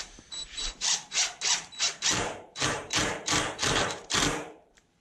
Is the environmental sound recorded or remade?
remade